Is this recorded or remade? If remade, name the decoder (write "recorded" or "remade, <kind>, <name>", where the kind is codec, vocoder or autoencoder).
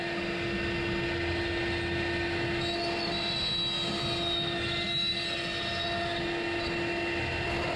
recorded